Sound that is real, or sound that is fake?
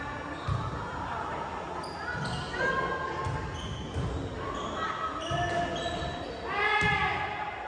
real